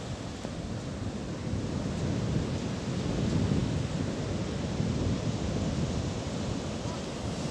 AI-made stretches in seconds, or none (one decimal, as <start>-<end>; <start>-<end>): none